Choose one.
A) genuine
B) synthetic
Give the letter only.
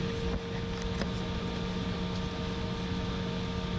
A